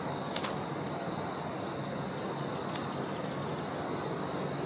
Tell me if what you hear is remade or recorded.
recorded